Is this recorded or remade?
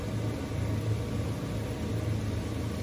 recorded